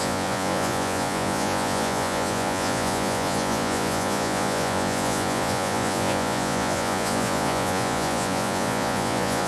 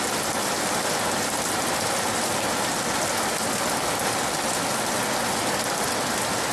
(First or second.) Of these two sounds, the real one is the second